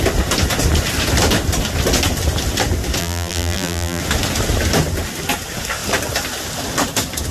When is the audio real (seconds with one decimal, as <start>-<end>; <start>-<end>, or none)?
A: 0.0-3.0; 4.0-7.3